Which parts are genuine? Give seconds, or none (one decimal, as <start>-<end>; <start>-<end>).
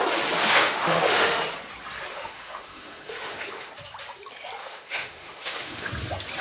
0.0-0.4; 1.4-2.1; 3.7-4.6; 5.9-6.4